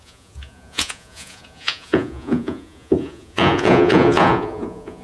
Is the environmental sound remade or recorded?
remade